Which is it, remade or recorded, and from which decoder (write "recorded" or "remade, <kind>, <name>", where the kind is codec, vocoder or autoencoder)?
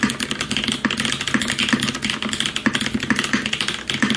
recorded